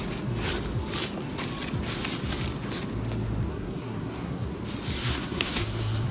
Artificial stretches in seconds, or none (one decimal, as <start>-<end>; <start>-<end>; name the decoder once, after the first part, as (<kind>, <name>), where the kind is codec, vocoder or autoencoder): 3.5-4.6 (codec, SNAC); 5.0-6.1

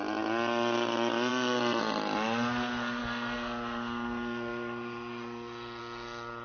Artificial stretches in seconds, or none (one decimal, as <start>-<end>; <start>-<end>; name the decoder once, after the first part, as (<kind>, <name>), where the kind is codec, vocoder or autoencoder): none

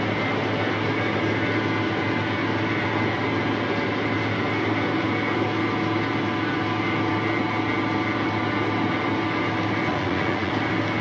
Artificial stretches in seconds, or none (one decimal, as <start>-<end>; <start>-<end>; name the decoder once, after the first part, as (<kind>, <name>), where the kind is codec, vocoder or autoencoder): 9.9-10.5 (vocoder, Vocos)

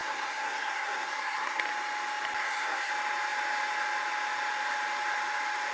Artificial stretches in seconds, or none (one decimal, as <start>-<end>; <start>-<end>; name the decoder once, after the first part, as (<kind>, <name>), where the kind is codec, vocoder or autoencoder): 0.0-1.6 (codec, SNAC); 2.4-2.9